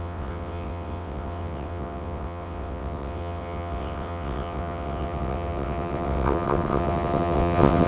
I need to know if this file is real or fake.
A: fake